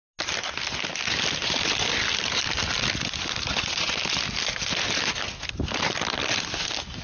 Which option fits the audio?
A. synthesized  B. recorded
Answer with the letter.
B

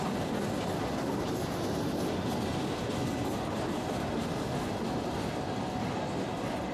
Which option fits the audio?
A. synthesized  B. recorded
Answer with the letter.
B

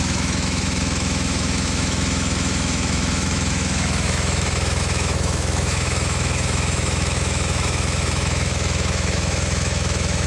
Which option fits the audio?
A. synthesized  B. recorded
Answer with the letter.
A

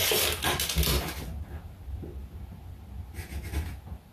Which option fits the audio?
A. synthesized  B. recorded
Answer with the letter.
B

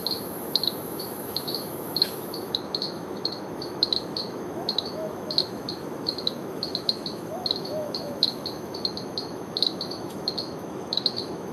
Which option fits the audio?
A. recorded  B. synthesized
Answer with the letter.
B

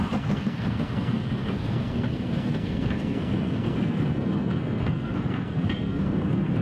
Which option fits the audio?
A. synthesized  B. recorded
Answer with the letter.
A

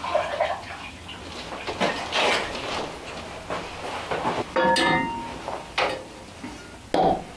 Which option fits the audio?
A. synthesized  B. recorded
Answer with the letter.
B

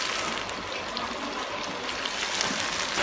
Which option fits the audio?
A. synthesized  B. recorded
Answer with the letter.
B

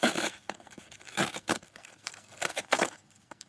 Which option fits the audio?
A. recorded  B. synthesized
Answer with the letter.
B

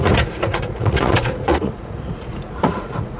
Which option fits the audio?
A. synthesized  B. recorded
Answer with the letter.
A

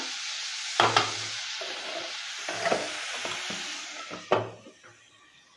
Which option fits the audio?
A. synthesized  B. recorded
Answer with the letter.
B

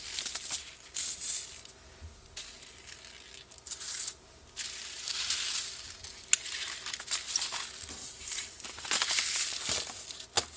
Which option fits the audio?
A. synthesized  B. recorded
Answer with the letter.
B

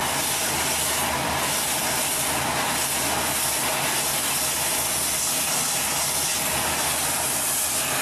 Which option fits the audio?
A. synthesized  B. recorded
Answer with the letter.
B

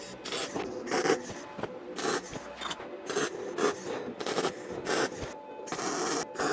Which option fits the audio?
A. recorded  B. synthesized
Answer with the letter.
A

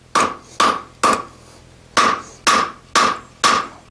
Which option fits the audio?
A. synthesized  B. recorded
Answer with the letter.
B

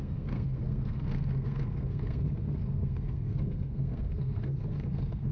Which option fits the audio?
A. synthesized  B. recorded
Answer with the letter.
A